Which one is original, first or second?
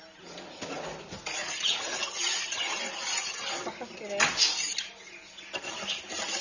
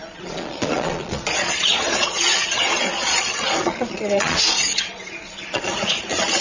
first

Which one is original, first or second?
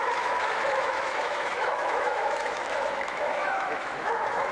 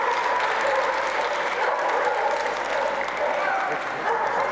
second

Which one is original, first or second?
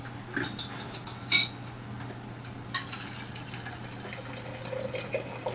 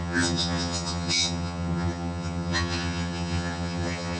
first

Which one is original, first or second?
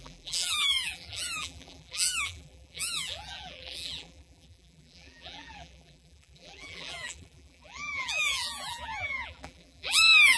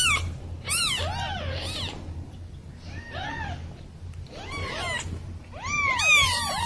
second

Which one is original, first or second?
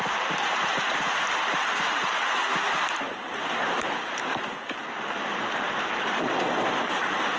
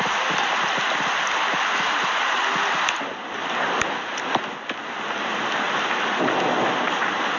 second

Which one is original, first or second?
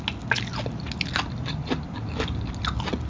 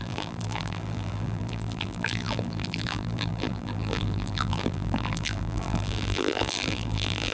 first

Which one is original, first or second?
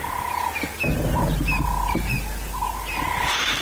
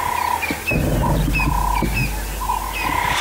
second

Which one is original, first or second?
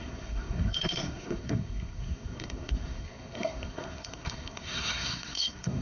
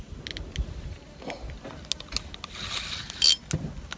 second